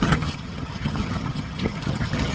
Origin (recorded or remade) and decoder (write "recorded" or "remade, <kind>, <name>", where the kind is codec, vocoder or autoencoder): remade, vocoder, HiFi-GAN